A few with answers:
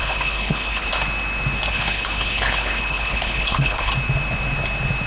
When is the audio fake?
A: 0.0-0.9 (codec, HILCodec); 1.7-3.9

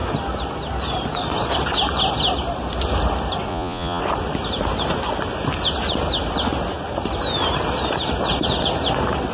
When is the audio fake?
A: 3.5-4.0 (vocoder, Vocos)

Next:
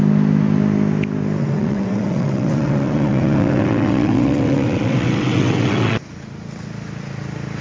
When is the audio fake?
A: 1.4-6.0 (vocoder, WaveNeXt)